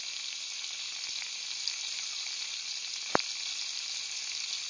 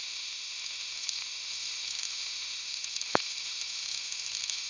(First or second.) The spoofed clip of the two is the second